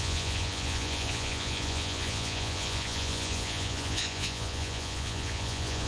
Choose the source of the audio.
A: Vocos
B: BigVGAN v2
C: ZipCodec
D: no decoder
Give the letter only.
A